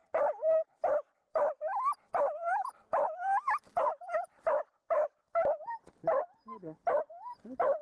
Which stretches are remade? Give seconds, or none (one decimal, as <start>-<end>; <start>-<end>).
0.7-1.6; 2.1-7.8